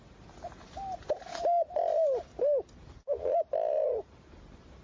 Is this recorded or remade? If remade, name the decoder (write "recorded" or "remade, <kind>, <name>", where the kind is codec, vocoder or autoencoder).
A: recorded